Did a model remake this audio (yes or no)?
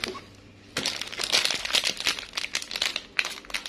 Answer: no